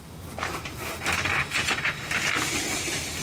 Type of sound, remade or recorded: recorded